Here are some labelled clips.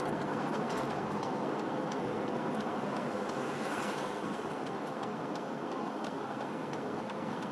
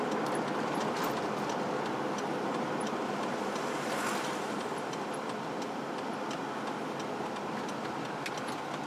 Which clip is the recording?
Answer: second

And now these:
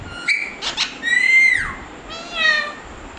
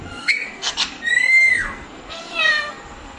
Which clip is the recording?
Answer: first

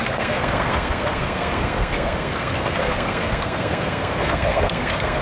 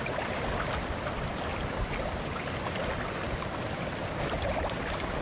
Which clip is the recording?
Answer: second